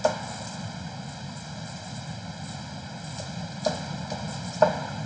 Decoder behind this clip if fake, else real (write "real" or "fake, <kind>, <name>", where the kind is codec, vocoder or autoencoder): real